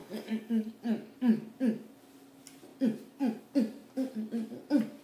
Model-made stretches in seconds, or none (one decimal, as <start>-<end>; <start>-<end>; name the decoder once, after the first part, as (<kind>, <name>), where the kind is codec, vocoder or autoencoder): 0.0-0.7 (codec, DAC)